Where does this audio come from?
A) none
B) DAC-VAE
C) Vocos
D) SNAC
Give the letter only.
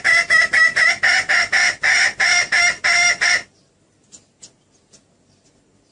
A